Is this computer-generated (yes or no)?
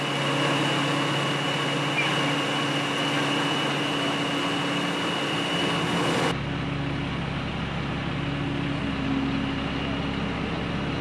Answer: no